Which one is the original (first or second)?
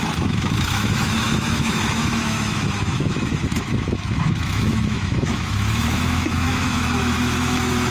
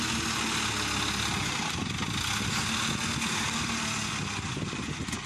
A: second